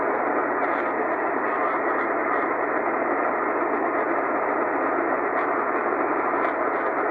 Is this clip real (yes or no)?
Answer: yes